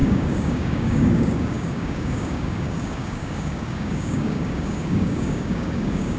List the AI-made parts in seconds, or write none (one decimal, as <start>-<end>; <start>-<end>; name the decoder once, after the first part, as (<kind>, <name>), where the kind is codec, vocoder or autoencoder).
0.0-6.2 (codec, DAC)